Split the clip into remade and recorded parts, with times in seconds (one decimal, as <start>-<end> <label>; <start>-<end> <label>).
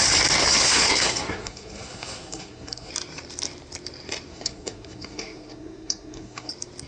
0.0-0.6 recorded; 0.6-2.9 remade; 2.9-4.3 recorded; 4.3-6.5 remade; 6.5-6.9 recorded